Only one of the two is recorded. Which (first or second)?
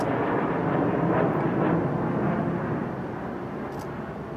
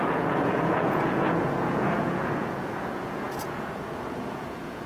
first